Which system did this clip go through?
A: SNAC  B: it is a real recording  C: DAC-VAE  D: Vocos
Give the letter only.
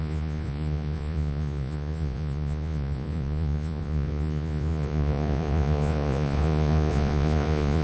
D